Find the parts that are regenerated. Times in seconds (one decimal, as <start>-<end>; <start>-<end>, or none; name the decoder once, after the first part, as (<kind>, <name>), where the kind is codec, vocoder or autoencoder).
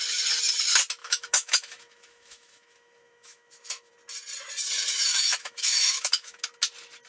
1.0-3.9 (autoencoder, DAC-VAE); 5.1-6.4